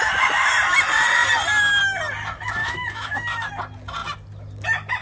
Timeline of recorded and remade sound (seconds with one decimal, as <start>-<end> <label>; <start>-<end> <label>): 0.0-2.6 recorded; 2.6-3.5 remade; 3.5-5.0 recorded